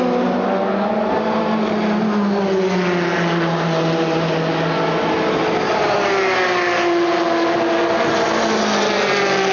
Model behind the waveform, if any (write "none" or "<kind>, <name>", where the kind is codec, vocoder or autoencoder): none